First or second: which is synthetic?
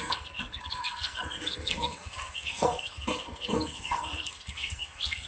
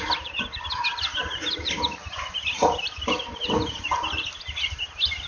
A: first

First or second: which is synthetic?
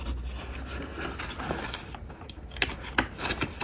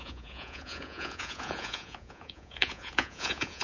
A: second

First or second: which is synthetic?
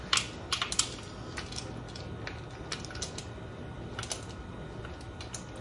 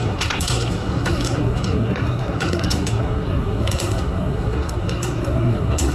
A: second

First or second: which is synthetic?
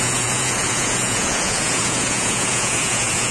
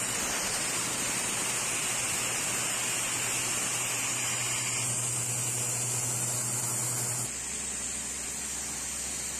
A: first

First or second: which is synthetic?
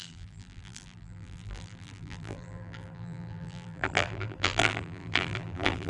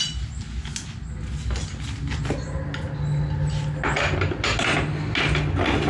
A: first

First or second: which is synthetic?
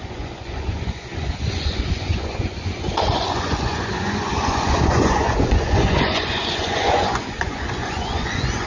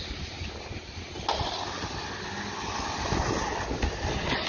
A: first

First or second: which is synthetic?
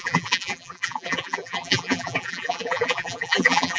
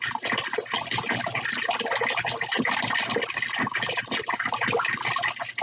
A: first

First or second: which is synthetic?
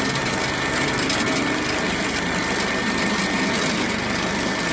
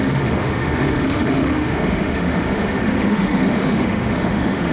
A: second